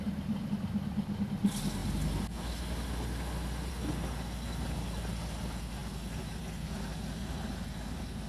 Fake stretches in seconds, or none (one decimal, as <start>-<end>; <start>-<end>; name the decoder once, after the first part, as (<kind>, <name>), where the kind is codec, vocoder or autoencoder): none